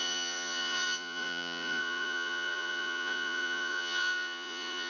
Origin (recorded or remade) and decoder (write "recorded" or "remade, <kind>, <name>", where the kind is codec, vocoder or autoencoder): remade, vocoder, Vocos